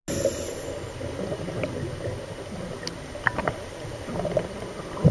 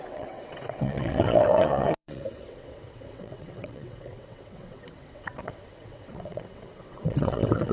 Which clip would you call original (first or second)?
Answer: first